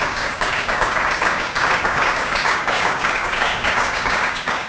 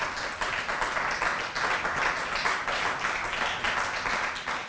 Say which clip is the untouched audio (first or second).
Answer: second